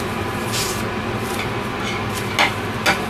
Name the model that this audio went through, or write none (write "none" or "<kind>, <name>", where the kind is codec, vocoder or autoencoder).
none